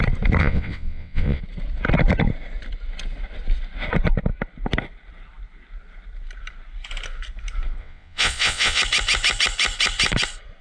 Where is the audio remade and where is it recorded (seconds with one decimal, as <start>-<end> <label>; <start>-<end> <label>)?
0.0-0.4 recorded; 0.4-1.4 remade; 1.4-7.8 recorded; 7.8-8.8 remade; 8.8-10.6 recorded